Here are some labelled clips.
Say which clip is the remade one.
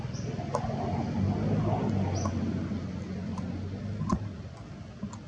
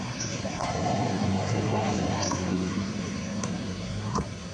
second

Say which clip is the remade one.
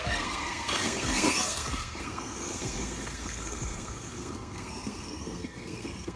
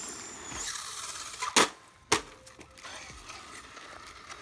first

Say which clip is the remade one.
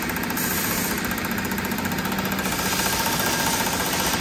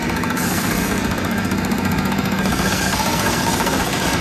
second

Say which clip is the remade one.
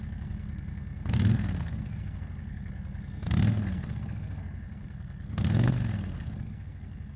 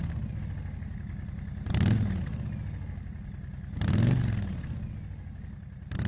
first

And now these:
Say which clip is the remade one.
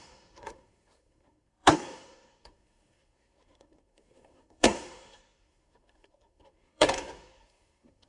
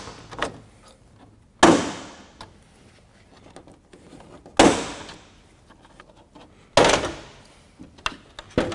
first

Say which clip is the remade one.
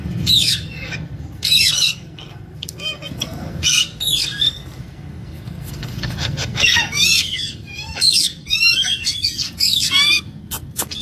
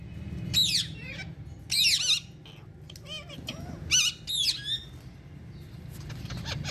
first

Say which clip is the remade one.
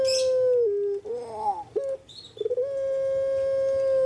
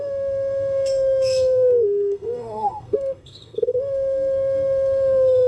second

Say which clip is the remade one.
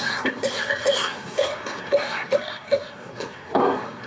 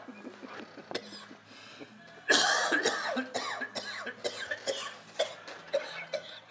first